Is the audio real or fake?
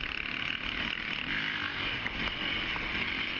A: real